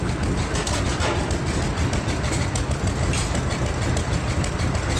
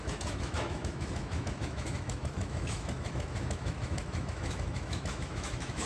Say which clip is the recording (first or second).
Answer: first